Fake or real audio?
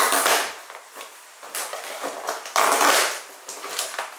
fake